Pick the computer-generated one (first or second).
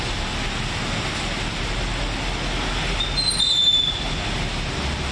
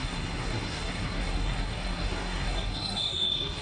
second